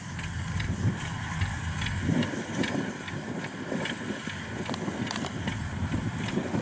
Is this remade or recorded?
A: recorded